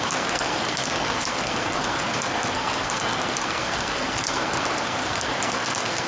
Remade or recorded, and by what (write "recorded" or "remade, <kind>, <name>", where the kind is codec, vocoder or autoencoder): remade, codec, SNAC